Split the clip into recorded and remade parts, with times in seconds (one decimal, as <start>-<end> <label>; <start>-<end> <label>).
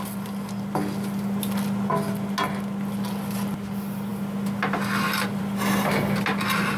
0.0-6.8 recorded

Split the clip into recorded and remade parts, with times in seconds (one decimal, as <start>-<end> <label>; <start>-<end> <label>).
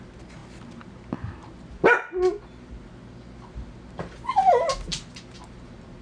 0.0-6.0 recorded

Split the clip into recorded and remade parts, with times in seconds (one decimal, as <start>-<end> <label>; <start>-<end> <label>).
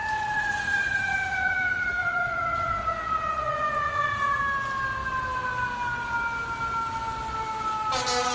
0.0-4.4 remade; 4.4-8.3 recorded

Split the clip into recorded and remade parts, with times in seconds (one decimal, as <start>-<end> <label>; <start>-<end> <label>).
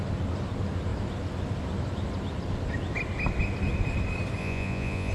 0.0-4.4 recorded; 4.4-5.1 remade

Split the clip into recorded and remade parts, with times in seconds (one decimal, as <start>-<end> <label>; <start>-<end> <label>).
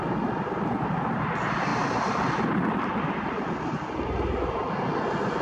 0.0-5.4 recorded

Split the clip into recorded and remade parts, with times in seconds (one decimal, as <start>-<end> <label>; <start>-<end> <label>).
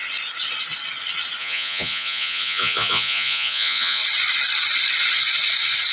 0.0-1.4 recorded; 1.4-4.0 remade; 4.0-5.9 recorded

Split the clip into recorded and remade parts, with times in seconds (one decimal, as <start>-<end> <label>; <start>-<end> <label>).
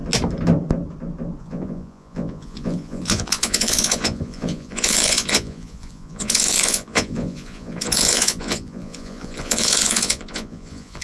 0.0-1.4 recorded; 1.4-11.0 remade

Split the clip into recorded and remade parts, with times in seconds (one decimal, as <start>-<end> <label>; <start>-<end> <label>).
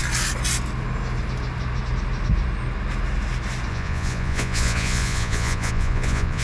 0.0-3.7 recorded; 3.7-6.4 remade